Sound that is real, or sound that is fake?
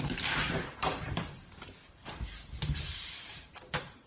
fake